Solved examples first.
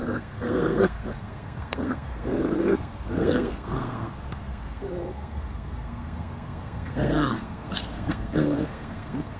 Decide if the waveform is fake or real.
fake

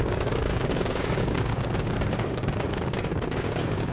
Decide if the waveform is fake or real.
fake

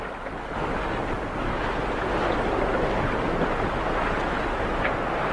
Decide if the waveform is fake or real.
real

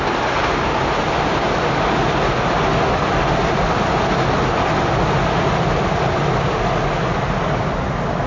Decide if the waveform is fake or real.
real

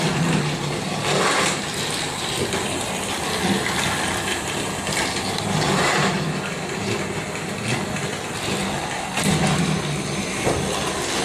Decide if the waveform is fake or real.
real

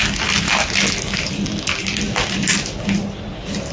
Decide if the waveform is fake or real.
real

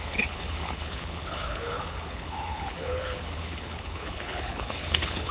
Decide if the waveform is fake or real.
fake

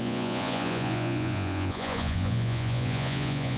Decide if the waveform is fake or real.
fake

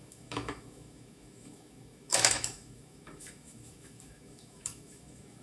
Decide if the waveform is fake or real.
fake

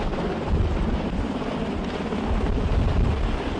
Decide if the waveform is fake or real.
real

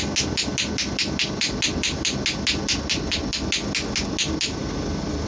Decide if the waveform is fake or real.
real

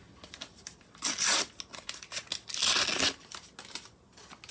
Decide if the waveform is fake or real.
real